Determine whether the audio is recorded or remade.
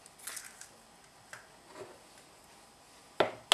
recorded